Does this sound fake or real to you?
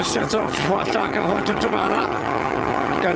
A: fake